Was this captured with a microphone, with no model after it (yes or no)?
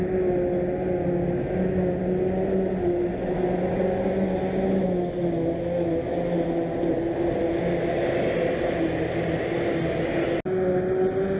yes